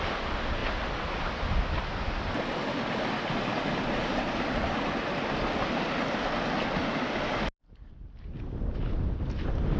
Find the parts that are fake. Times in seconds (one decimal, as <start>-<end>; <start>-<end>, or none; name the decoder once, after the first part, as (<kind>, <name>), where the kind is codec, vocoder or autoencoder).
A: none